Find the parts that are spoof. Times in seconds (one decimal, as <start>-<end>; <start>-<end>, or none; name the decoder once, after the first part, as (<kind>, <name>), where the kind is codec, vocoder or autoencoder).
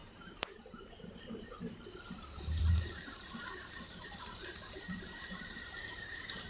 0.0-6.5 (vocoder, BigVGAN v2)